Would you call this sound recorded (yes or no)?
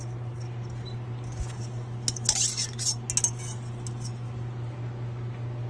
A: yes